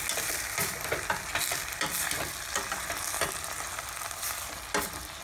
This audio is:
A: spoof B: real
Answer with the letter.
B